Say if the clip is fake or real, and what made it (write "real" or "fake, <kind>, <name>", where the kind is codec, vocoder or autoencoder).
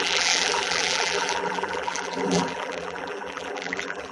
fake, vocoder, BigVGAN v2